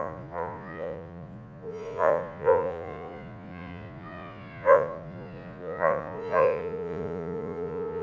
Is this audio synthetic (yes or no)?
yes